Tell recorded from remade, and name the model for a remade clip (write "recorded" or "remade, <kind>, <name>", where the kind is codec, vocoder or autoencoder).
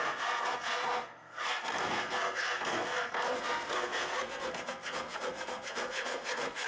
remade, codec, SNAC